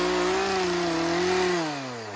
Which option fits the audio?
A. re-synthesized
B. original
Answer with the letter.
B